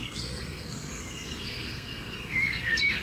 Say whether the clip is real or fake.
fake